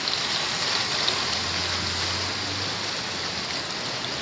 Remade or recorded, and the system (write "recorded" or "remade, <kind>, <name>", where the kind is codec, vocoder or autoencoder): recorded